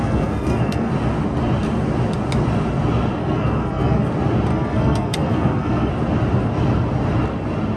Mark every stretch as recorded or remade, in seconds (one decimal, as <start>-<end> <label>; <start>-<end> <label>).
0.0-0.9 remade; 0.9-3.2 recorded; 3.2-4.1 remade; 4.1-4.5 recorded; 4.5-5.9 remade; 5.9-7.8 recorded